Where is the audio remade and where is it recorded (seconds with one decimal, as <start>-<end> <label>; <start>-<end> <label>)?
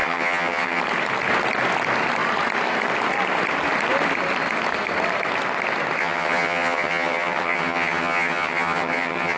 0.0-0.8 remade; 0.8-6.0 recorded; 6.0-9.4 remade